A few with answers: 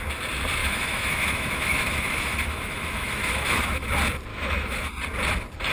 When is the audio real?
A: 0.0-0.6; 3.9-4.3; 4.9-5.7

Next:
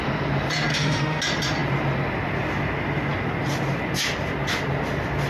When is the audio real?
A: 0.0-0.7; 1.2-5.3

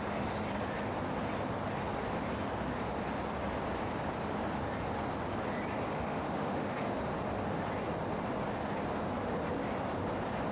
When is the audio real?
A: 0.0-5.9; 6.9-10.5

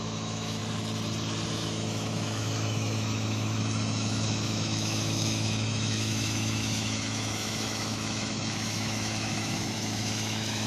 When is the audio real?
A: 0.6-1.5

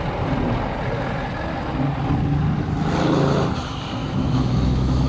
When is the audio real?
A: 0.0-4.0

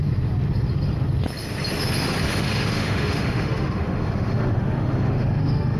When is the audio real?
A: 0.0-2.3

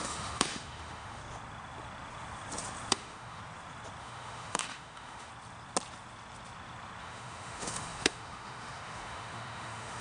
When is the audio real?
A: 1.2-2.9; 3.4-4.0; 5.3-7.0